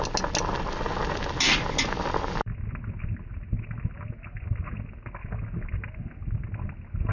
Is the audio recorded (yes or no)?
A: yes